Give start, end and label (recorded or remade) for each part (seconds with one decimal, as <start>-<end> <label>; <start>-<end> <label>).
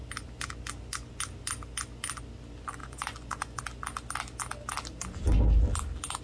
0.0-2.8 recorded; 2.8-3.6 remade; 3.6-6.2 recorded